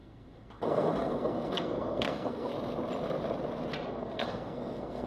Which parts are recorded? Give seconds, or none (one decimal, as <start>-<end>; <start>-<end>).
2.5-3.9